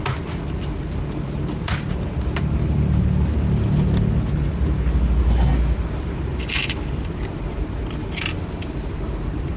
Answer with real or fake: real